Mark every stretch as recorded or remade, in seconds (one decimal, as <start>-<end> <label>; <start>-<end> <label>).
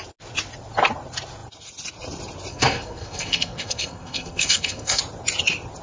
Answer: 0.0-2.5 recorded; 2.5-5.0 remade; 5.0-5.8 recorded